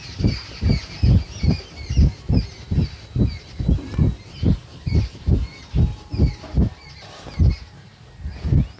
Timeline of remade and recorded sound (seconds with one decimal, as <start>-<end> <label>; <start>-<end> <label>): 0.0-8.8 recorded

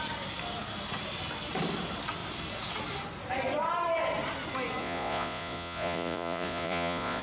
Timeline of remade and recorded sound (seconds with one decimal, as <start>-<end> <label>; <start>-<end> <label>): 0.0-4.8 recorded; 4.8-7.2 remade

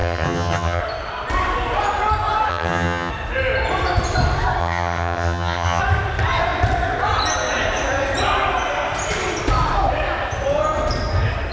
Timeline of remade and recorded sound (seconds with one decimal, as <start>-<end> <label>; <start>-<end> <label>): 0.0-0.8 remade; 0.8-2.5 recorded; 2.5-3.1 remade; 3.1-4.6 recorded; 4.6-5.8 remade; 5.8-11.5 recorded

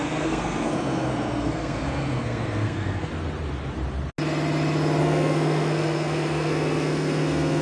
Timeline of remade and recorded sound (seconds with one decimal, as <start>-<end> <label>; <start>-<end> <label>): 0.0-3.1 remade; 3.1-5.0 recorded; 5.0-7.6 remade

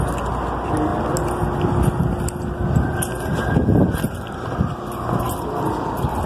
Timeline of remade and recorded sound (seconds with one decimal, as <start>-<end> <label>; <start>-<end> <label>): 0.0-6.3 recorded

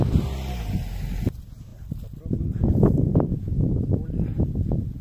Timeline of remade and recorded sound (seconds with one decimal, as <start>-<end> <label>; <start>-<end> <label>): 0.0-5.0 recorded